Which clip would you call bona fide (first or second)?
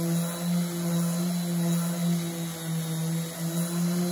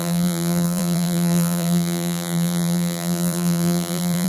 first